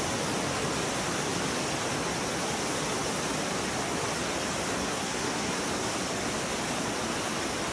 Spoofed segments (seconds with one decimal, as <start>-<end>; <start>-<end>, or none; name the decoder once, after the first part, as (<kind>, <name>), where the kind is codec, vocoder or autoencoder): 4.9-5.6 (codec, SNAC)